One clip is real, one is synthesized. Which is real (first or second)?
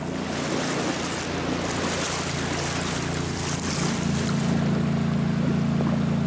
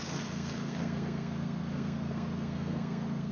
first